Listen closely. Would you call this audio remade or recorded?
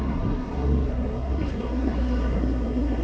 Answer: remade